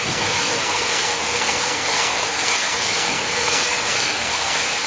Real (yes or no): no